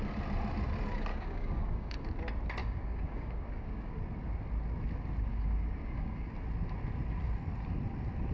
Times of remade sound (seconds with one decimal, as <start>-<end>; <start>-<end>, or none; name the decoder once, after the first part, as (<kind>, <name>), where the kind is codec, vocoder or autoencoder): 1.1-2.1 (codec, DAC); 2.6-3.9; 5.3-6.3